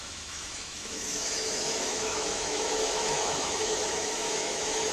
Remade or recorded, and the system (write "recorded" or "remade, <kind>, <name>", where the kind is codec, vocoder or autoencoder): remade, autoencoder, DAC-VAE